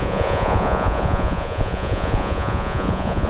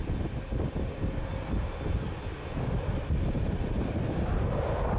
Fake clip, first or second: first